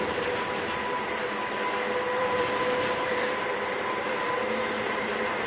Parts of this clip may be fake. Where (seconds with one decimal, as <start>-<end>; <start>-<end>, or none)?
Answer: 0.0-1.5; 2.2-5.1